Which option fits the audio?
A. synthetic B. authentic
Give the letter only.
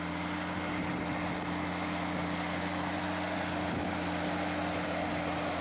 B